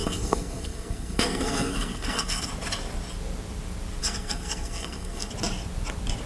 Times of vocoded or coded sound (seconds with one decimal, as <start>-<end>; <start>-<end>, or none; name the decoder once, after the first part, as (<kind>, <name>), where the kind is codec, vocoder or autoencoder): 0.0-2.5 (codec, SNAC); 4.0-5.3